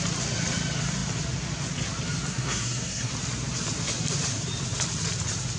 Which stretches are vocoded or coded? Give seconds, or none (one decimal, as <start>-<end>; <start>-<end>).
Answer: 2.3-3.1